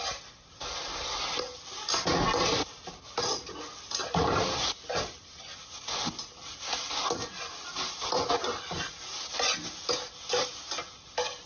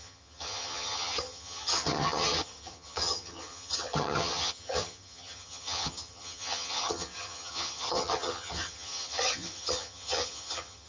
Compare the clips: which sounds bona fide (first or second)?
first